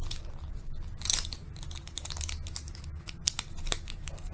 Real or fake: real